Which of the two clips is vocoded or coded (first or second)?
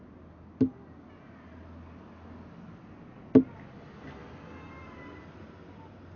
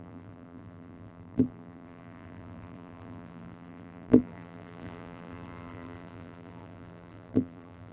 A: second